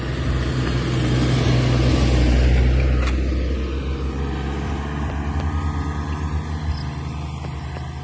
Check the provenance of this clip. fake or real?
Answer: real